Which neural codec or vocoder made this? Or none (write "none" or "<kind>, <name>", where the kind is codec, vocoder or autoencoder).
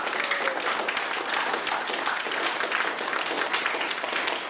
none